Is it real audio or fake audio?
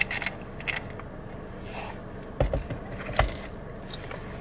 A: real